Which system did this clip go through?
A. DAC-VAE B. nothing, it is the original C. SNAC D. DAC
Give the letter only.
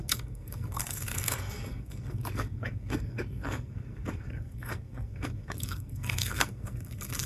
C